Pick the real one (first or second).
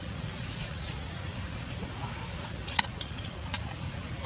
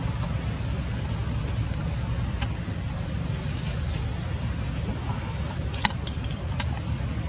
second